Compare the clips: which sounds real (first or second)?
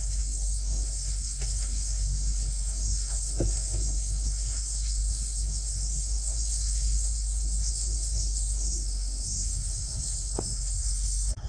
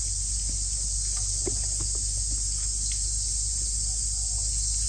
second